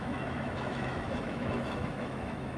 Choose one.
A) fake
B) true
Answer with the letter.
A